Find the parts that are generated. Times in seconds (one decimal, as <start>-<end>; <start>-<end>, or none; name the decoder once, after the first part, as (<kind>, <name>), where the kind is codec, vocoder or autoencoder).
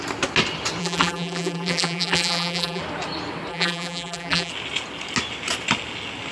0.8-2.8 (vocoder, BigVGAN v2); 3.5-4.5